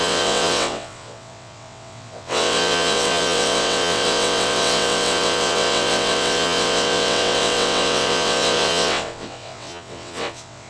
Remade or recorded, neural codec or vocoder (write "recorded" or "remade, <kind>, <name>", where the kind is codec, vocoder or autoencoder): remade, vocoder, WaveNeXt